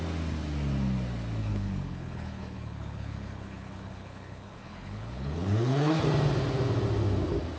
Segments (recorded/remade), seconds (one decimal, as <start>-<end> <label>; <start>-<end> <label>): 0.0-1.4 recorded; 1.4-6.0 remade; 6.0-7.6 recorded